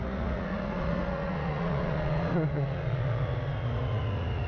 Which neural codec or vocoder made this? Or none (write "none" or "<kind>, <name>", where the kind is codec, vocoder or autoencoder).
vocoder, Vocos